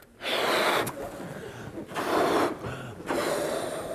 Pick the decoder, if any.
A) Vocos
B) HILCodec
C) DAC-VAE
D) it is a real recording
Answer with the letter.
D